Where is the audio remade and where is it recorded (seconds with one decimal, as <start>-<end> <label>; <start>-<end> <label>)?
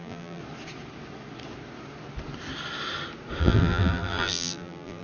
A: 0.0-0.4 remade; 0.4-3.4 recorded; 3.4-5.0 remade